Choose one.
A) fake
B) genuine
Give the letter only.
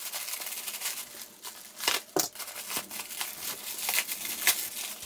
B